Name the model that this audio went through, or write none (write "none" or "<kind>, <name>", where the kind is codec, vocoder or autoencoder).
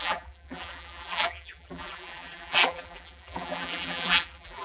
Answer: vocoder, BigVGAN v2